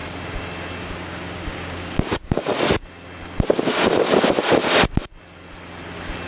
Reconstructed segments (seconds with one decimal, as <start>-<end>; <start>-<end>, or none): 0.8-2.5